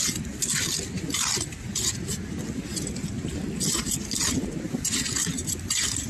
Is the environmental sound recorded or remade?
recorded